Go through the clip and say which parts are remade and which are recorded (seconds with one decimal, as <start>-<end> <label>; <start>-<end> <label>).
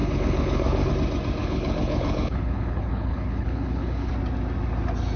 0.0-0.9 remade; 0.9-1.4 recorded; 1.4-4.1 remade; 4.1-5.2 recorded